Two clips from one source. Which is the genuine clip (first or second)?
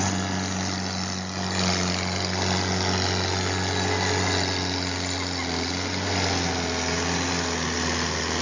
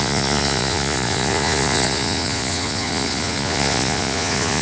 first